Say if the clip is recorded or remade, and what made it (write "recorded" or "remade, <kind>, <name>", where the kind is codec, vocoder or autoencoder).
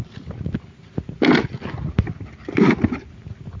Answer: recorded